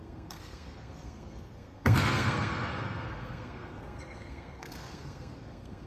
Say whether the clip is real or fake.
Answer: fake